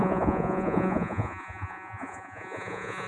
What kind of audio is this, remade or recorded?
remade